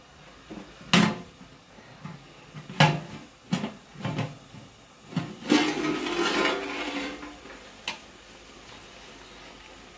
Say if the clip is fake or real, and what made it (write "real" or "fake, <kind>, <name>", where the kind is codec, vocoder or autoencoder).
real